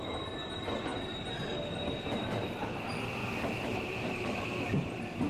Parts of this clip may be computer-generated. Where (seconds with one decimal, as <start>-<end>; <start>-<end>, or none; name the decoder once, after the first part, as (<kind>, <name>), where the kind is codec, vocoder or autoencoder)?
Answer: 3.2-5.3 (vocoder, BigVGAN v2)